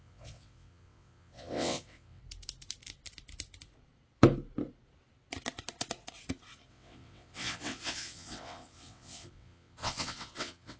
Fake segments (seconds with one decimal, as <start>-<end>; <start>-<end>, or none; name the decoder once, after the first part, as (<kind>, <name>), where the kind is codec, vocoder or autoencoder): 0.0-2.2 (vocoder, WaveNeXt); 6.7-10.8